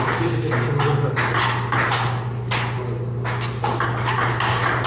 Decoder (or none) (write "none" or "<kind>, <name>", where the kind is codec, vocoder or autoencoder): none